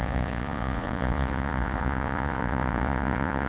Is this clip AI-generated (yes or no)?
yes